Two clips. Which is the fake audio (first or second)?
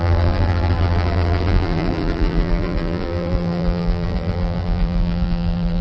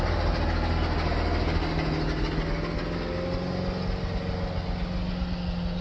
first